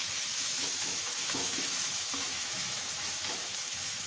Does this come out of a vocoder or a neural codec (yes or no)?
yes